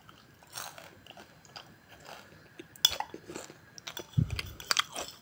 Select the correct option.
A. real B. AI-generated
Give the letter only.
A